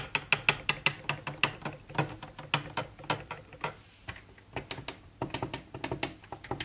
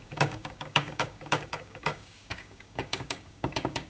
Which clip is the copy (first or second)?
second